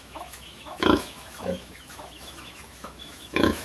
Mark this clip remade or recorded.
remade